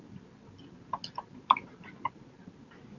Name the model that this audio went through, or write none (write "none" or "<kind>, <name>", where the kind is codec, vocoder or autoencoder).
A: none